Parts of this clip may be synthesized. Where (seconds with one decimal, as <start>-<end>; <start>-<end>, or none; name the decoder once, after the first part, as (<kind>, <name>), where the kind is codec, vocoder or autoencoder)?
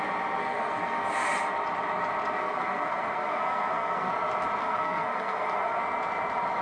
0.4-1.0 (codec, SNAC); 2.4-4.1; 4.6-5.8